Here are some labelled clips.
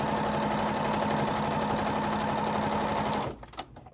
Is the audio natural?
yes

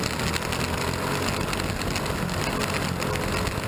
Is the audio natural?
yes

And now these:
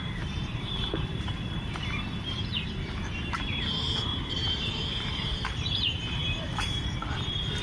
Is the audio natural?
no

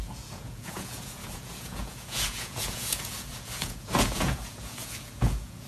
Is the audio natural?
no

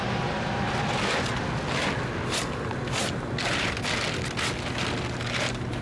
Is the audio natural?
yes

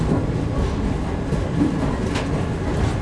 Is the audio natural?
yes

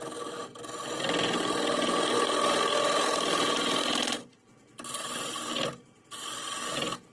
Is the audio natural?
yes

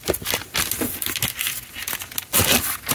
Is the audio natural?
yes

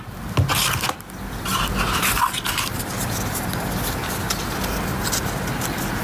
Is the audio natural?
yes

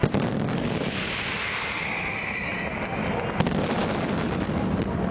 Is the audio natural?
yes